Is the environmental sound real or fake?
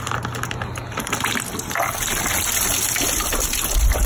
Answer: real